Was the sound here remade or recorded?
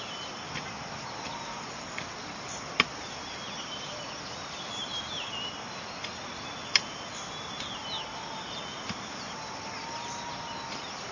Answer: recorded